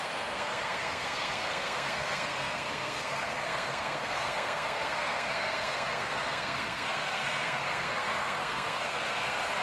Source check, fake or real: fake